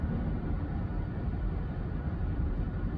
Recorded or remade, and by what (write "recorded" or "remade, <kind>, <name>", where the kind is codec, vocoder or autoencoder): recorded